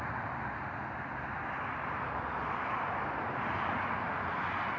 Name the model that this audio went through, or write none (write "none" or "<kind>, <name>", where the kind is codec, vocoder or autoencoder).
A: none